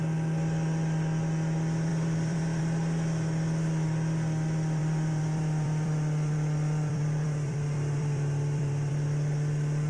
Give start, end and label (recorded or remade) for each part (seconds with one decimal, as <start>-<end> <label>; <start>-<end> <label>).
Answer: 0.0-1.9 recorded; 1.9-2.6 remade; 2.6-4.8 recorded; 4.8-8.9 remade; 8.9-9.9 recorded